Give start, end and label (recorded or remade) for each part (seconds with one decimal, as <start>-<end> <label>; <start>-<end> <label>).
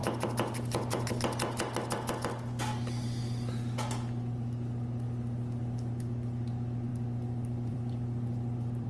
0.0-1.1 remade; 1.1-6.9 recorded; 6.9-8.9 remade